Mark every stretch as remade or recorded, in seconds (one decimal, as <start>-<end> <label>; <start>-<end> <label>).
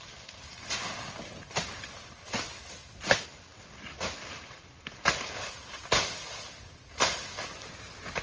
0.0-8.2 recorded